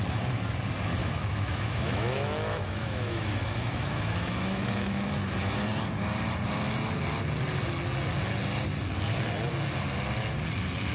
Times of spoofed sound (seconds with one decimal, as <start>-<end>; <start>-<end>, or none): 1.0-5.1